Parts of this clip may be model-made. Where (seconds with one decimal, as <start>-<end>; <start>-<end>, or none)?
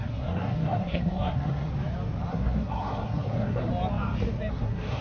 0.0-1.7; 2.3-3.7; 4.5-5.0